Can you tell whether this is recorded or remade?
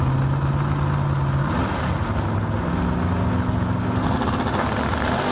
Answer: recorded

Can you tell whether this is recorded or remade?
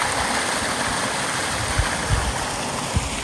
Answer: recorded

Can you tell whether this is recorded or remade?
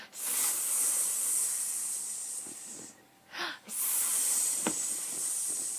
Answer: remade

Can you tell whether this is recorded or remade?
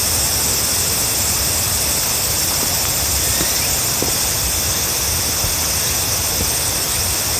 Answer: recorded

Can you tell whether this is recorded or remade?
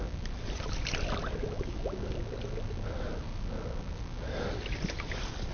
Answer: recorded